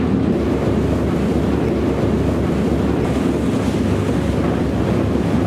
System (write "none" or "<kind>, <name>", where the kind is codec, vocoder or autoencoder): none